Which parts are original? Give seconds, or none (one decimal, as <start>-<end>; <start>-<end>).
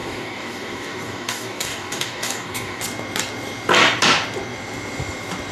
2.8-5.5